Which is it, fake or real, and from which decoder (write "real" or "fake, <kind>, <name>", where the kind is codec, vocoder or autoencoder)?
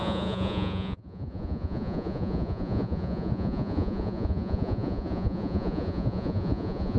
fake, vocoder, Vocos